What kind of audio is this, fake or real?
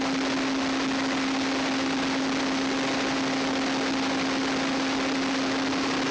real